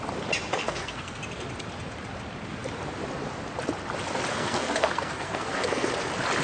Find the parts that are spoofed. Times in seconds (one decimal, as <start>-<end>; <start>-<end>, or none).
0.6-1.2; 4.3-5.9